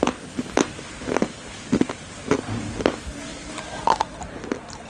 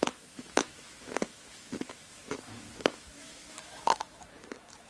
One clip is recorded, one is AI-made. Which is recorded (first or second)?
first